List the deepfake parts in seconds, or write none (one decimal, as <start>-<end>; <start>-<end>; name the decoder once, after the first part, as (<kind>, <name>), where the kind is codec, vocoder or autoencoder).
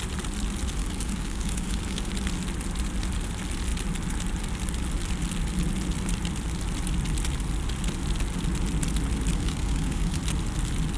0.8-2.1 (codec, DAC); 9.3-10.2